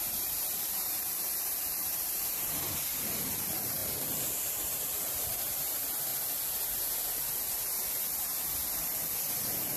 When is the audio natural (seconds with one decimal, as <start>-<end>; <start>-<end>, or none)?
3.8-4.5; 6.1-9.4